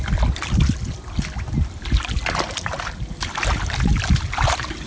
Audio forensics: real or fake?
real